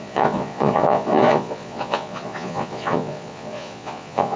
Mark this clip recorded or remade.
remade